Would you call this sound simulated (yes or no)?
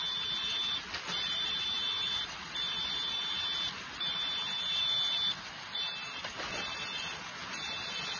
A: no